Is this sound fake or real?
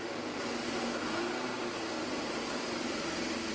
real